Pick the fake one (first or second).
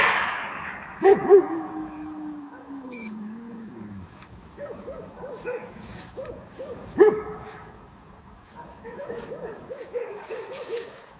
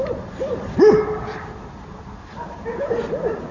first